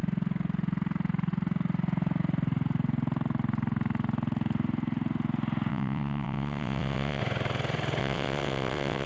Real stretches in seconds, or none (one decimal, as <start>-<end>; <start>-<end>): 0.0-5.7; 7.2-8.0